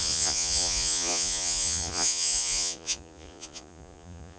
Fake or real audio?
fake